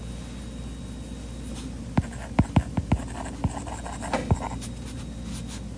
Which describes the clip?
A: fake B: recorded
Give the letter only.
B